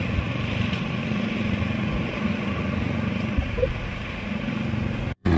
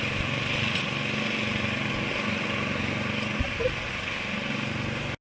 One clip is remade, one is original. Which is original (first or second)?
second